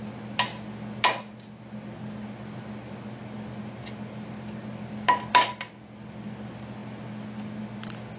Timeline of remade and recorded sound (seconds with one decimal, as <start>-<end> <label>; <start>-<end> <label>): 0.0-8.2 recorded